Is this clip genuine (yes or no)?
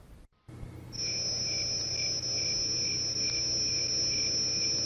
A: yes